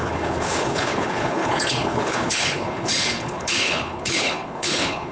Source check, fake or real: fake